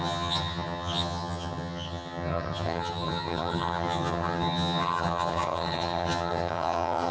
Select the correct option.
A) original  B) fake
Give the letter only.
B